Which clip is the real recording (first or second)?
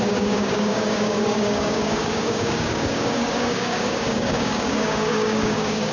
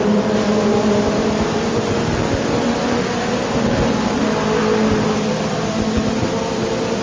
second